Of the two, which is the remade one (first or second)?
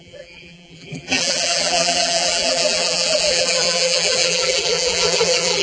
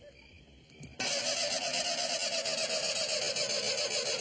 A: first